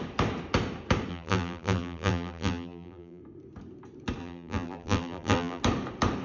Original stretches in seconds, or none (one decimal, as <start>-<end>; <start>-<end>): 0.0-1.1; 3.2-4.2; 5.6-6.2